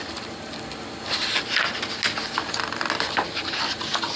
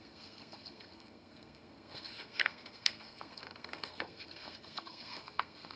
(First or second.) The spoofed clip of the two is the second